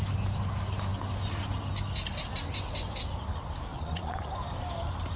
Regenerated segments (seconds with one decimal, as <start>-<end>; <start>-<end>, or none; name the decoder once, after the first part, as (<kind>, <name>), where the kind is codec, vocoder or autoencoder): 3.7-4.3 (vocoder, Vocos)